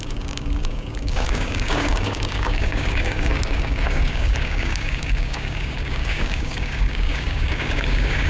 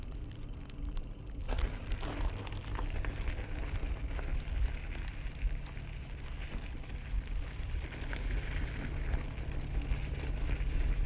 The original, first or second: second